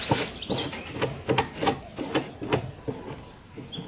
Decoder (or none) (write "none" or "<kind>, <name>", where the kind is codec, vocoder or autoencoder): none